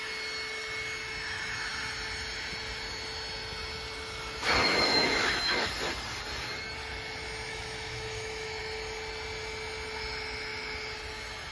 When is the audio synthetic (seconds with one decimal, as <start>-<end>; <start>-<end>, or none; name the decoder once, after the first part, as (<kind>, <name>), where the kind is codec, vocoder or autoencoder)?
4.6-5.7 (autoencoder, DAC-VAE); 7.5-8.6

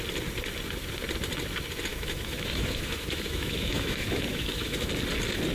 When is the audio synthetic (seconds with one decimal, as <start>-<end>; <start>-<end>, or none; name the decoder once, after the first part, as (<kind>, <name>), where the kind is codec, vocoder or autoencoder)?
1.9-4.9 (autoencoder, DAC-VAE)

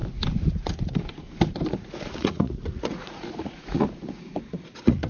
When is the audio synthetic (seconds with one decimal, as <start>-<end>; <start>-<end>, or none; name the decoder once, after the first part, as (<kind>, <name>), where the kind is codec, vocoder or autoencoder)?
1.7-5.1 (vocoder, Vocos)